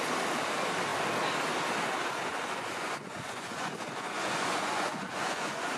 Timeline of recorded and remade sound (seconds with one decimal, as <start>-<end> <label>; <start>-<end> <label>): 0.0-2.3 recorded; 2.3-5.8 remade